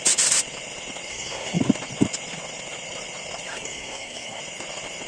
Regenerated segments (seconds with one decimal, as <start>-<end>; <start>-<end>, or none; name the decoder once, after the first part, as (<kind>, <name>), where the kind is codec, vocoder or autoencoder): 1.1-1.6 (codec, SNAC); 3.5-4.4